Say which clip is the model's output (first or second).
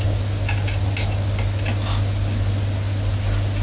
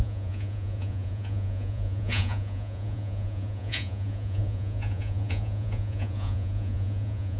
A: second